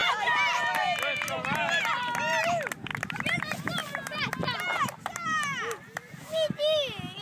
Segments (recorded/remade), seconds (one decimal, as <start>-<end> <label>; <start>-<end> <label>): 0.0-7.2 recorded